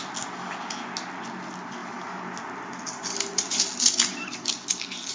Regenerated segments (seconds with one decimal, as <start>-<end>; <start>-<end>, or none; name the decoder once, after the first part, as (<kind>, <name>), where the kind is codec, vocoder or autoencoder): none